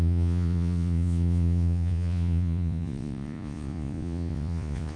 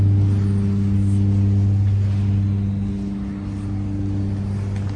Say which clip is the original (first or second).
second